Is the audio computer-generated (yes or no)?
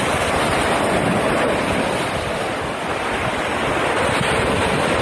no